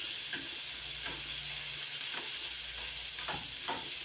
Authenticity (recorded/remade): recorded